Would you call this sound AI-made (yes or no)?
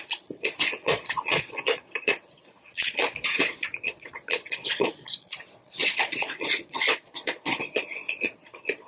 yes